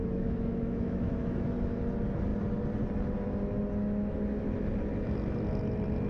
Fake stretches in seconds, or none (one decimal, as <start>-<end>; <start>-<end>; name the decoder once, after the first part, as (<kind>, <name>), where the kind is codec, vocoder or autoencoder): 0.0-1.8 (autoencoder, DAC-VAE)